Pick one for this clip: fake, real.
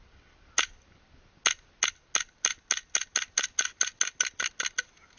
real